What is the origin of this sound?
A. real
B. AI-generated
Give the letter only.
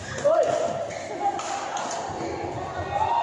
A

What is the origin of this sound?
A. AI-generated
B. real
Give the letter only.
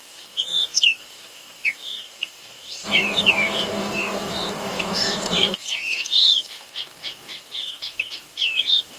A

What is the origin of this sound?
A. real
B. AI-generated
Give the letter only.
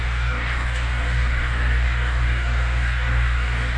B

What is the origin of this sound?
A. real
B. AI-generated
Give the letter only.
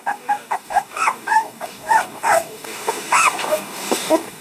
B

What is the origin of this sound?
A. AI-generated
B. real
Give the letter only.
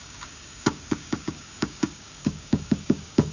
A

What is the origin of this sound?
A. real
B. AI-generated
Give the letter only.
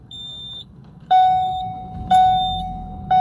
B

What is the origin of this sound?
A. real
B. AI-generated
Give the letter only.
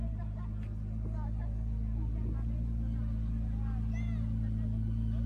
A